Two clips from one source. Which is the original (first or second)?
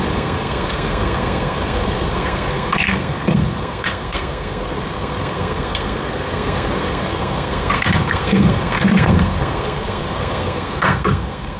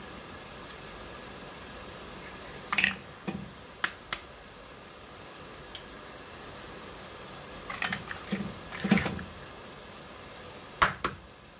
second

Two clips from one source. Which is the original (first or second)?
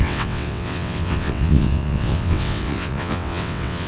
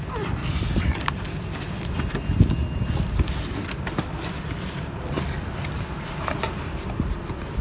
second